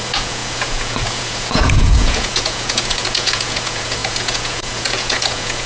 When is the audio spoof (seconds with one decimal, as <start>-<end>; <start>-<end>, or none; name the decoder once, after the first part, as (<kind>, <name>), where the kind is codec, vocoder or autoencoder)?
0.0-5.7 (vocoder, Vocos)